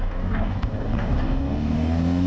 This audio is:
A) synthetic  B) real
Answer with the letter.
A